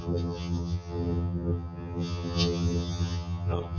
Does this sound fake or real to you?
fake